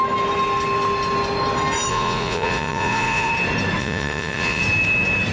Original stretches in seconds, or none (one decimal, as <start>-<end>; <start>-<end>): 0.0-1.9; 3.3-3.8; 4.6-5.3